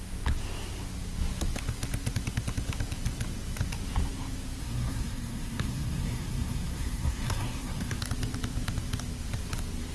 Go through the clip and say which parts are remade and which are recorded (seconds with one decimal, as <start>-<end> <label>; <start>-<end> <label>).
0.0-4.6 recorded; 4.6-8.0 remade; 8.0-9.9 recorded